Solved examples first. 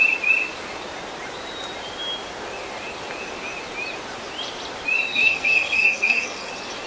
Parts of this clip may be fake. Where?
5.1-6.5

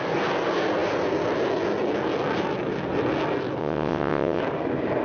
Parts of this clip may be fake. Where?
3.6-4.4

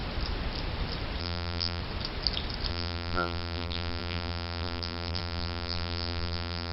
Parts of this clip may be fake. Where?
1.2-1.8; 2.7-6.7

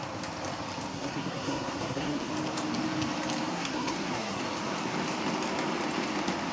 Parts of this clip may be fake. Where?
0.9-2.3; 3.5-4.4

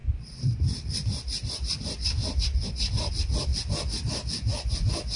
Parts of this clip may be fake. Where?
0.0-3.5

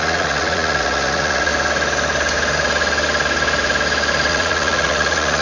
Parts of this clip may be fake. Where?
0.0-1.5; 4.3-5.4

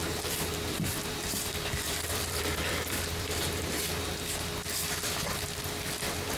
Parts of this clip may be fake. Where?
0.0-3.8